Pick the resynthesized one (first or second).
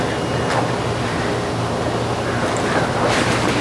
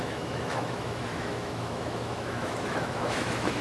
second